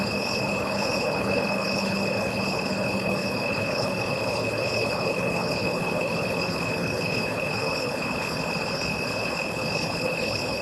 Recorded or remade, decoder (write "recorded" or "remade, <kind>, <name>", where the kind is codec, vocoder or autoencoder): remade, codec, HILCodec